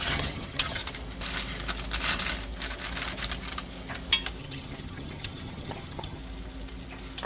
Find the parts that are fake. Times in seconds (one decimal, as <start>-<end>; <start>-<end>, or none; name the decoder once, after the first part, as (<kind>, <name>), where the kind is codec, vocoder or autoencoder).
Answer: 0.0-0.8 (vocoder, HiFi-GAN); 4.4-6.2